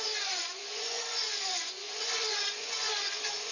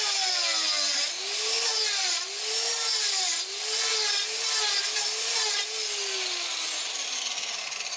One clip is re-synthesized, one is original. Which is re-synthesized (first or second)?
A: first